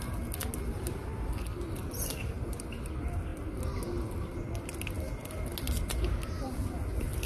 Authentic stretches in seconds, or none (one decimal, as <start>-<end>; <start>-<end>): 0.0-7.3